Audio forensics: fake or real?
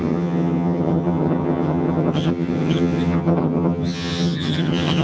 fake